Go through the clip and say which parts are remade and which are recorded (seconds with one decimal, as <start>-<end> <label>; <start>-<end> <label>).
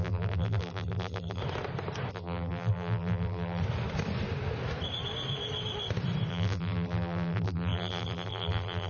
0.0-1.4 remade; 1.4-2.1 recorded; 2.1-3.6 remade; 3.6-6.3 recorded; 6.3-8.9 remade